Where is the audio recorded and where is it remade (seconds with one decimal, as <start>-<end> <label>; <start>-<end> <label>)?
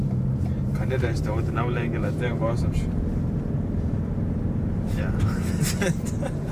0.0-6.5 remade